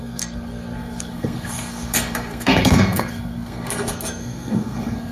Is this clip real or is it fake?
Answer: fake